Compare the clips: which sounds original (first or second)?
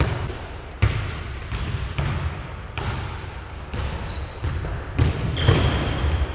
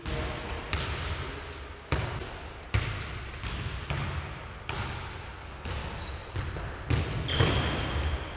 second